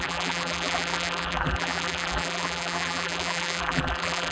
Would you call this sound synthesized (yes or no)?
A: yes